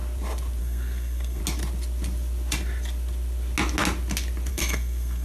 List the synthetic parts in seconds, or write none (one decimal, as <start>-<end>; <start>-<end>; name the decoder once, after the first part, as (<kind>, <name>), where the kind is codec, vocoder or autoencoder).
0.6-1.4 (codec, SNAC); 4.5-5.2